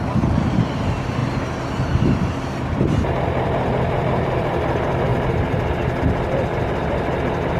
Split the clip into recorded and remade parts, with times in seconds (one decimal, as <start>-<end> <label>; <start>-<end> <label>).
0.0-5.1 remade; 5.1-6.0 recorded; 6.0-7.6 remade